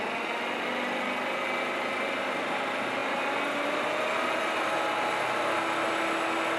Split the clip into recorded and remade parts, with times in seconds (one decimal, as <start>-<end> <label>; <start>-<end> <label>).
0.0-6.6 recorded